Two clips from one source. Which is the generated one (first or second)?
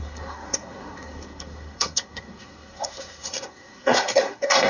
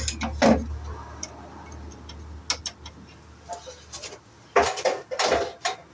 first